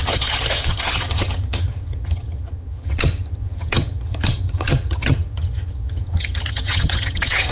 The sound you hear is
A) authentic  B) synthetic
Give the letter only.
B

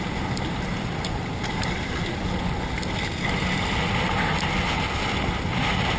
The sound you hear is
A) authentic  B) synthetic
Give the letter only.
A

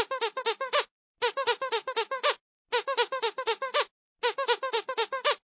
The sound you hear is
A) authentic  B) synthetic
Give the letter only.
A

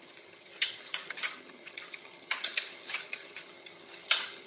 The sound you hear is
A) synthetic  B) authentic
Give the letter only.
A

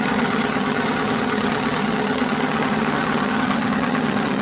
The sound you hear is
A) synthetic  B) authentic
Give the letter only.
A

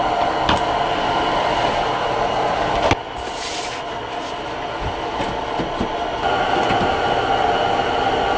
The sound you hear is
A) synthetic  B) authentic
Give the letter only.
B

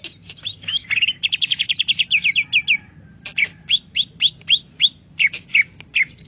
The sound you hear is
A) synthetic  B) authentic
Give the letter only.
B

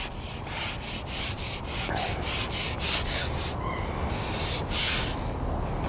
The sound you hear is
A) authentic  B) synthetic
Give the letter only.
A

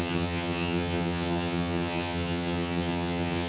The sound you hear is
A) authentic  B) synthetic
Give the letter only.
B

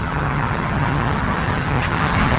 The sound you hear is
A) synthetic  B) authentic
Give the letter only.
A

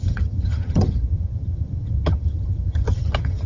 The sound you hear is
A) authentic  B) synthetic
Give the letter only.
B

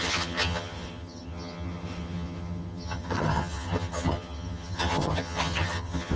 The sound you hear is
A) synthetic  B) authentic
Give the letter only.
A